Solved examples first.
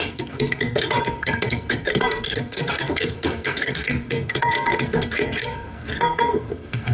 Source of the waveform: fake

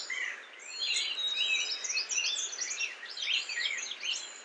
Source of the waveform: real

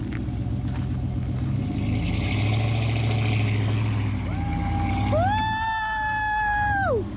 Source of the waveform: real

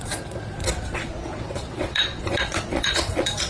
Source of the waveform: fake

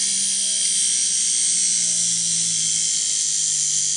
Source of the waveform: real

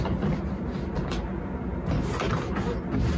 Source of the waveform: real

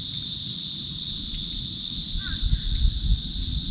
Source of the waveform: real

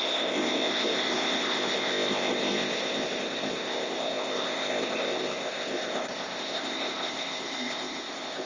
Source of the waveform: fake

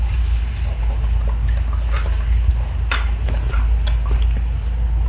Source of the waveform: real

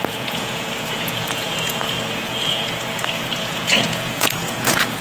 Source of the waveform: fake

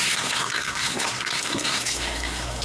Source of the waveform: fake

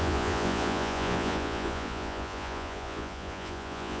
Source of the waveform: fake